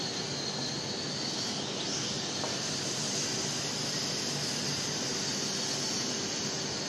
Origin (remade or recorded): recorded